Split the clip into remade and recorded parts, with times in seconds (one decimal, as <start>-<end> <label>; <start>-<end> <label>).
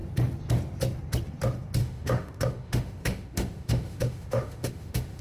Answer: 0.0-1.8 recorded; 1.8-5.2 remade